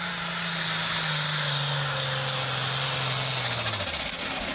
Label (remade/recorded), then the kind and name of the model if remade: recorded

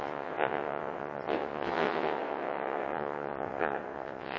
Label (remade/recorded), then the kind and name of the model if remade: remade, vocoder, WaveNeXt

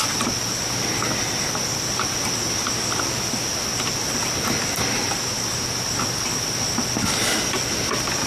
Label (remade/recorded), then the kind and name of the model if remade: recorded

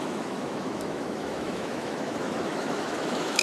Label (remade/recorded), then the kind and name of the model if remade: remade, autoencoder, DAC-VAE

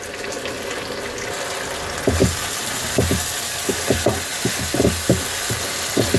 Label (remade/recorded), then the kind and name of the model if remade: recorded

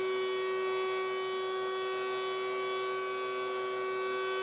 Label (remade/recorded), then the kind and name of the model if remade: recorded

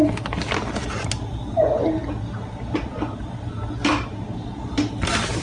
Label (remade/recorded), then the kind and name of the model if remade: recorded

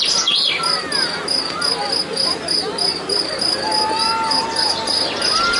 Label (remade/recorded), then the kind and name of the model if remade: recorded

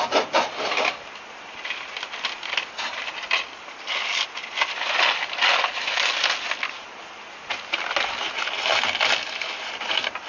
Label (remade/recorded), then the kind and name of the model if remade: recorded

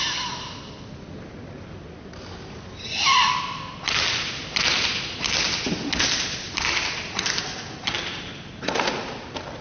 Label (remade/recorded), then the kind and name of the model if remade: recorded